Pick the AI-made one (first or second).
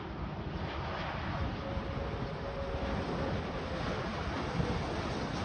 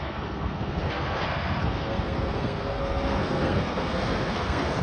second